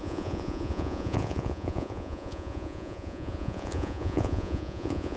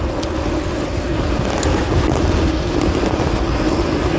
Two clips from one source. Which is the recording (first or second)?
second